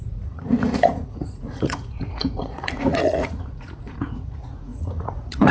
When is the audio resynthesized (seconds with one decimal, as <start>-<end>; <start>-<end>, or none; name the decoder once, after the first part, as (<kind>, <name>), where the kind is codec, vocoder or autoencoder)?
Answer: 0.0-5.5 (vocoder, Vocos)